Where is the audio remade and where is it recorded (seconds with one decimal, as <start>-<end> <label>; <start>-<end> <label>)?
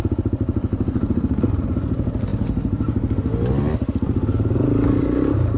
0.0-0.7 recorded; 0.7-1.4 remade; 1.4-5.6 recorded